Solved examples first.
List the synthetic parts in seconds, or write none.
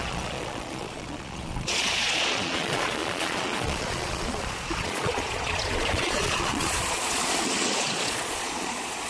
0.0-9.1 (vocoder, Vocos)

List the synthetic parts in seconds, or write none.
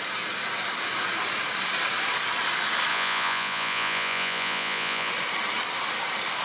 2.9-5.1 (vocoder, Vocos)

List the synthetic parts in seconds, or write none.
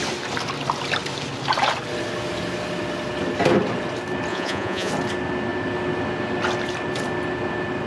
4.3-4.9 (vocoder, Vocos)